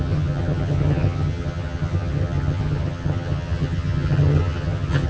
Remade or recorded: remade